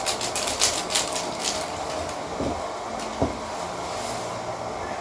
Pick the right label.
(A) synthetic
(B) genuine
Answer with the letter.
B